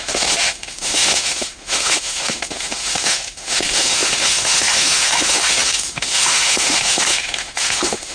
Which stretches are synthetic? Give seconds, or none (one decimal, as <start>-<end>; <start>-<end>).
0.0-8.1